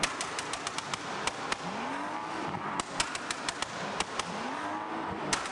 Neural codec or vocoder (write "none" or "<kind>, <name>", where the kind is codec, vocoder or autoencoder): vocoder, BigVGAN v2